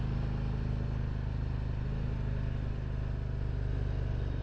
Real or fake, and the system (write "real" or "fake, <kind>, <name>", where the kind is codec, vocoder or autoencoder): real